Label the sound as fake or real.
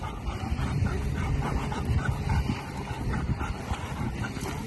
real